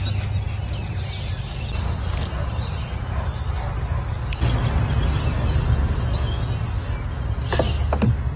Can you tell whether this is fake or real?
real